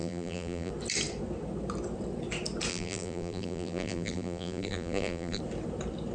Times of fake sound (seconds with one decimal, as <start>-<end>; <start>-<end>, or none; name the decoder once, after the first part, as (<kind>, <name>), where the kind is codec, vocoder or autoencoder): 0.0-0.7 (vocoder, BigVGAN v2); 2.7-5.4